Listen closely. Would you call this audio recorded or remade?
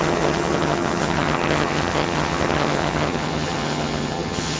remade